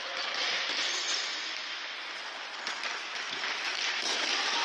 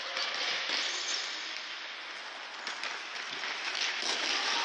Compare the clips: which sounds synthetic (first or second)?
first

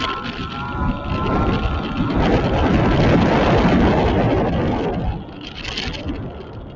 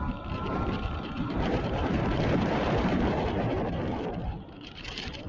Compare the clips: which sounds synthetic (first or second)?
second